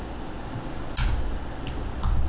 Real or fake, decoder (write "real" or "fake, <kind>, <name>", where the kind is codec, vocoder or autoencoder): real